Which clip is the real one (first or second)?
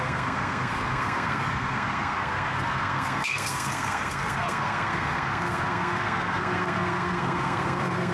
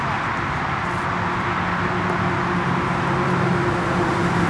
second